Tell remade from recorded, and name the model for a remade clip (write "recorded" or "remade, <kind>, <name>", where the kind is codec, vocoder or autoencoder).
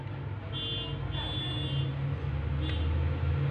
recorded